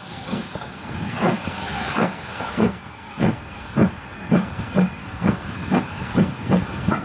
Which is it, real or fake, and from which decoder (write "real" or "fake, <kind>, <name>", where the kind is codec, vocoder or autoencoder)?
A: fake, codec, SNAC